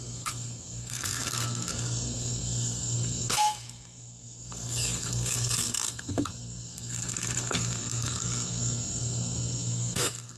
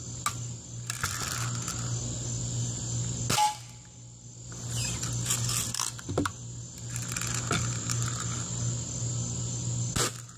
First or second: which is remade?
first